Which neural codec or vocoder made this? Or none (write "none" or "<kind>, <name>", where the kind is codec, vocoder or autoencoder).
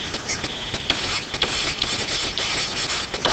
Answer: none